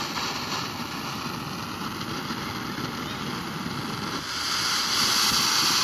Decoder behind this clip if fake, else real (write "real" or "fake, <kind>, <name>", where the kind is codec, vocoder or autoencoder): real